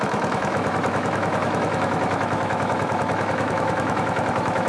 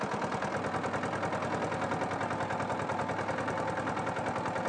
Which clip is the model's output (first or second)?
first